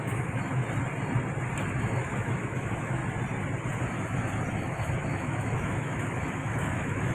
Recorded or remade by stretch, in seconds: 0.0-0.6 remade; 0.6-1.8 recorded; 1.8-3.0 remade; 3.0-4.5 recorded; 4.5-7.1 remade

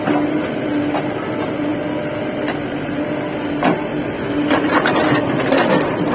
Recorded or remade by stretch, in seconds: 0.0-6.1 recorded

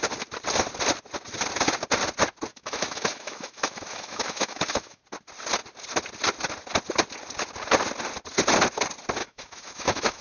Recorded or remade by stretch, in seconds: 0.0-2.5 recorded; 2.5-5.0 remade; 5.0-9.2 recorded; 9.2-10.2 remade

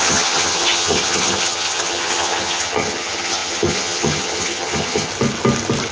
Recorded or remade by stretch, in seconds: 0.0-5.1 remade; 5.1-5.9 recorded

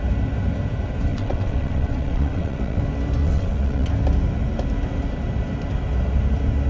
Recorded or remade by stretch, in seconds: 0.0-1.1 recorded; 1.1-2.8 remade; 2.8-3.2 recorded; 3.2-3.9 remade; 3.9-6.7 recorded